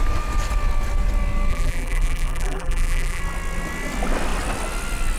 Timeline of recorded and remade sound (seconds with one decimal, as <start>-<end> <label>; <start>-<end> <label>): 0.0-1.5 recorded; 1.5-3.2 remade; 3.2-5.2 recorded

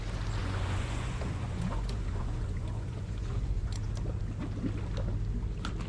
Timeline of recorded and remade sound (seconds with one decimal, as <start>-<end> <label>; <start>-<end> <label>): 0.0-0.4 recorded; 0.4-3.9 remade; 3.9-5.9 recorded

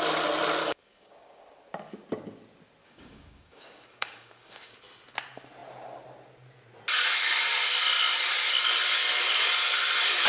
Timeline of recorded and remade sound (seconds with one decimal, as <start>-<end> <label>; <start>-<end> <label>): 0.0-0.6 recorded; 0.6-1.4 remade; 1.4-2.8 recorded; 2.8-4.8 remade; 4.8-10.3 recorded

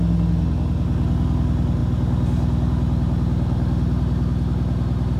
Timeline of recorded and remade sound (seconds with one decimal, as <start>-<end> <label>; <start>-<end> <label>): 0.0-5.2 recorded

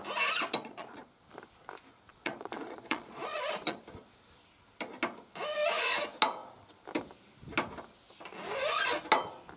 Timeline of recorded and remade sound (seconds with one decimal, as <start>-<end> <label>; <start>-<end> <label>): 0.0-0.6 recorded; 0.6-1.1 remade; 1.1-2.1 recorded; 2.1-3.8 remade; 3.8-9.6 recorded